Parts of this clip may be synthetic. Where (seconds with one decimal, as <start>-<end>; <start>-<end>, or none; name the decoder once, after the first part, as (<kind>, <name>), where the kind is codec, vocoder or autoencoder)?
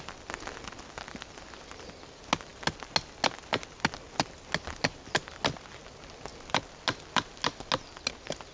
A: none